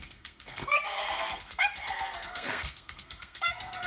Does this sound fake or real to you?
fake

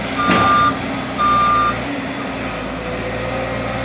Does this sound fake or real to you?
real